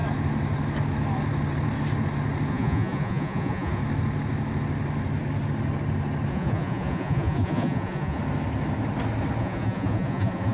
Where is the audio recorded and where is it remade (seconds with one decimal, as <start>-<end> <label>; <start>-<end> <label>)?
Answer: 0.0-2.5 recorded; 2.5-3.8 remade; 3.8-6.3 recorded; 6.3-8.2 remade; 8.2-9.4 recorded; 9.4-10.5 remade